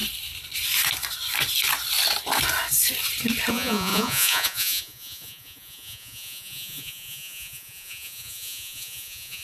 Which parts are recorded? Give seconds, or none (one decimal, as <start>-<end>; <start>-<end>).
0.0-3.5